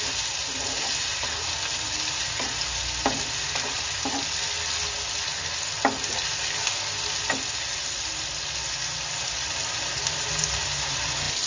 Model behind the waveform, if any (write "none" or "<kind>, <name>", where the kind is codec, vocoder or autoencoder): none